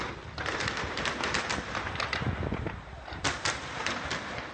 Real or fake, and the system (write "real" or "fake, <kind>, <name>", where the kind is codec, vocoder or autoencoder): fake, vocoder, BigVGAN v2